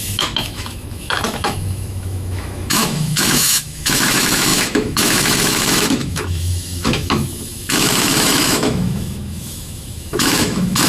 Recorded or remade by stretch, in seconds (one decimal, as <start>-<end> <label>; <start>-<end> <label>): 0.0-10.9 remade